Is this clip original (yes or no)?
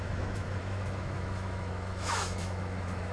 no